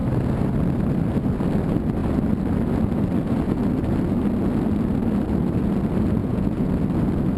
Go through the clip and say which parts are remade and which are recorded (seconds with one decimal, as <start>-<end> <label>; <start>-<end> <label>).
0.0-6.2 recorded; 6.2-6.7 remade; 6.7-7.4 recorded